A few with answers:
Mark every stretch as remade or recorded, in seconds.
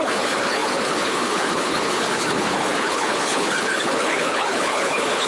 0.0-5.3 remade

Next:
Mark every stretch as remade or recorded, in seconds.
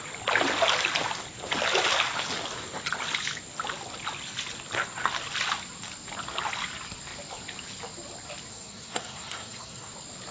0.0-8.5 recorded; 8.5-9.9 remade; 9.9-10.3 recorded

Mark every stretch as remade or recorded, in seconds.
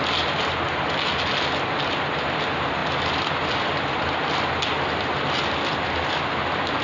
0.0-6.8 recorded